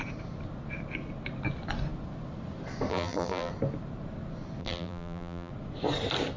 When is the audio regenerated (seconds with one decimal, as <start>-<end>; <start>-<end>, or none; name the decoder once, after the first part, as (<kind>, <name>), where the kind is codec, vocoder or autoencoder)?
2.9-3.5 (vocoder, BigVGAN v2); 4.6-5.5